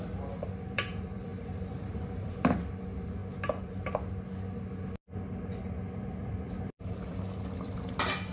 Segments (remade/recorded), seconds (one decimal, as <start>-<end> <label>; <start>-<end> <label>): 0.0-3.2 remade; 3.2-6.0 recorded; 6.0-8.3 remade